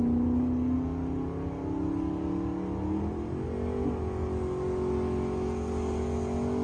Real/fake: real